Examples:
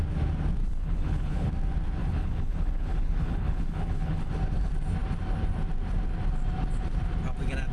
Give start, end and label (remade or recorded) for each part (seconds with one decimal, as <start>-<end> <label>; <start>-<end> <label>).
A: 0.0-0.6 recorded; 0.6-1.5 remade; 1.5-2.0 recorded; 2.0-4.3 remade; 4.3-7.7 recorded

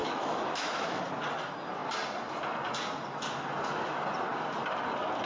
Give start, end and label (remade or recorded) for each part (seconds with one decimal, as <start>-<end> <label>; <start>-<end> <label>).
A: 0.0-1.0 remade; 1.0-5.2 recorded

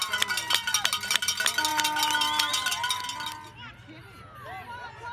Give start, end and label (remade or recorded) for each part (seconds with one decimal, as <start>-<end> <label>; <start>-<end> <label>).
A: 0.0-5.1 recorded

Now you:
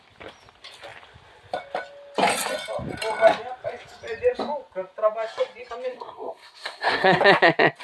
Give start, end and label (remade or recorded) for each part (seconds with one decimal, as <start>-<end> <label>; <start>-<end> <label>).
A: 0.0-5.9 recorded; 5.9-7.2 remade; 7.2-7.8 recorded

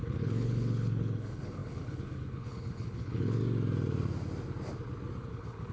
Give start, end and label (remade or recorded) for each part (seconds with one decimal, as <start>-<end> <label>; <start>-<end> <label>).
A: 0.0-3.4 remade; 3.4-5.3 recorded; 5.3-5.7 remade